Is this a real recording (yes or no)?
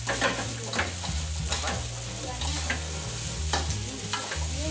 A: yes